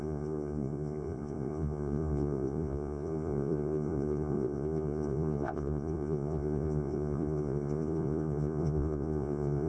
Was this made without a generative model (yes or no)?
no